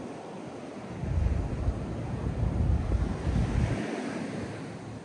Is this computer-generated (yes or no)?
no